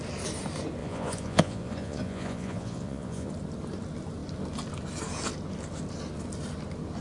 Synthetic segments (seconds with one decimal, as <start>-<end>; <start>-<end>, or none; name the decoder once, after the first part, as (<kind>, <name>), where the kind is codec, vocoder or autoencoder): 0.8-3.3 (vocoder, Vocos)